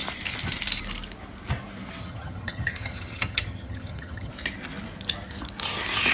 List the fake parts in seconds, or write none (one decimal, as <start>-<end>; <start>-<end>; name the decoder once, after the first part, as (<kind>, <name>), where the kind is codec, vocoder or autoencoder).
2.0-4.3 (vocoder, HiFi-GAN)